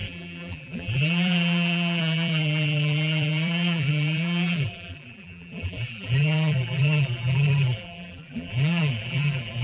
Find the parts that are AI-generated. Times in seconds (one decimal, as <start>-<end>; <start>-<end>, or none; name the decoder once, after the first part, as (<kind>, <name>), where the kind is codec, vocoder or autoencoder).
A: 0.0-9.6 (vocoder, BigVGAN v2)